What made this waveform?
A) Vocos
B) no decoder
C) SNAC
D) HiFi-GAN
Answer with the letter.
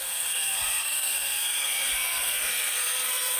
C